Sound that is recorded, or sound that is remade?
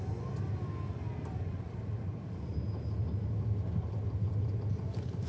recorded